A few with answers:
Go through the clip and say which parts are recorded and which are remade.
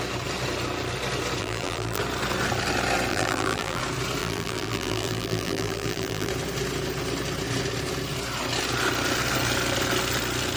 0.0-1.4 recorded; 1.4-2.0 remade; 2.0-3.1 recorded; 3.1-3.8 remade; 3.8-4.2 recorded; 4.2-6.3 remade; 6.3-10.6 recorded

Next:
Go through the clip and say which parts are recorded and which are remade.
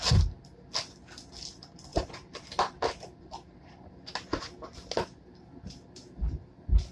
0.0-1.9 recorded; 1.9-3.9 remade; 3.9-4.3 recorded; 4.3-4.8 remade; 4.8-6.9 recorded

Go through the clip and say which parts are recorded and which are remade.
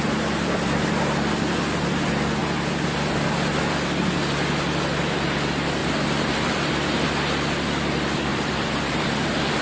0.0-5.8 recorded; 5.8-6.7 remade; 6.7-8.3 recorded; 8.3-9.6 remade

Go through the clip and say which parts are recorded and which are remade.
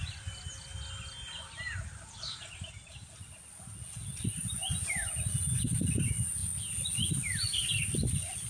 0.0-4.3 recorded; 4.3-5.8 remade; 5.8-8.5 recorded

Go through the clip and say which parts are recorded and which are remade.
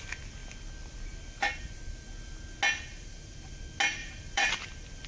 0.0-2.9 recorded; 2.9-3.6 remade; 3.6-4.0 recorded; 4.0-4.5 remade; 4.5-5.1 recorded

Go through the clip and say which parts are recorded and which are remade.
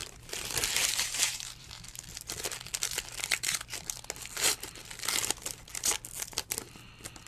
0.0-1.7 remade; 1.7-7.3 recorded